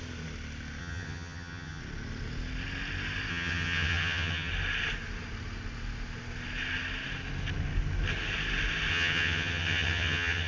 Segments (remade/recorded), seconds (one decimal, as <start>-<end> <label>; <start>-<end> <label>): 0.0-0.8 recorded; 0.8-1.8 remade; 1.8-3.3 recorded; 3.3-4.5 remade; 4.5-8.9 recorded; 8.9-10.5 remade